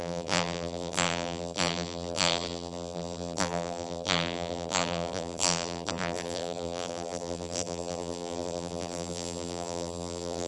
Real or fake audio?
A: fake